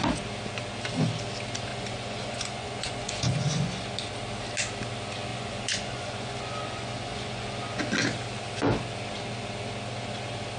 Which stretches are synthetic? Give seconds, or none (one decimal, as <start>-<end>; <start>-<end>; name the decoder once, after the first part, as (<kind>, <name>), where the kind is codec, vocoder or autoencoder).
1.7-4.1 (vocoder, Vocos); 5.3-7.8